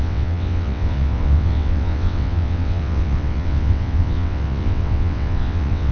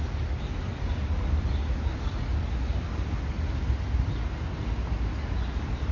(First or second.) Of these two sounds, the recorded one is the second